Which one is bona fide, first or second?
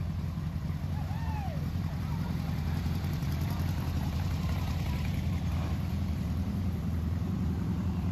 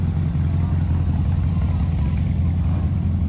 second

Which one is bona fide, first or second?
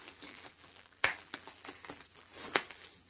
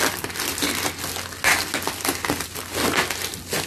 second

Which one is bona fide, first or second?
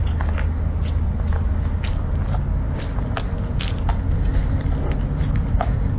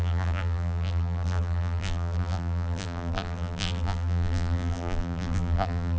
first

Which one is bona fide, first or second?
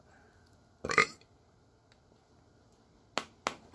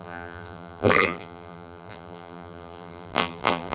first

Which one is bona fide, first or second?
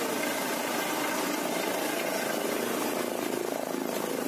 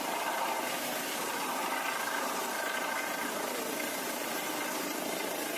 first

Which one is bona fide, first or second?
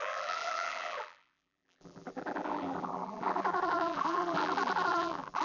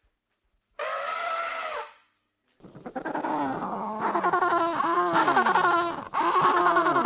second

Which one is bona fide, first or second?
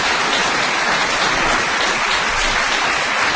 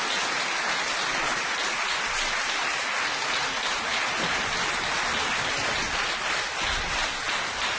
second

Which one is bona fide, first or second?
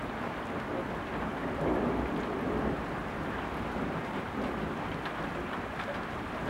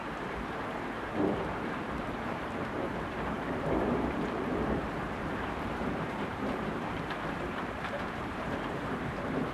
first